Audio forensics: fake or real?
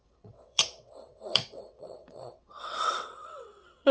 fake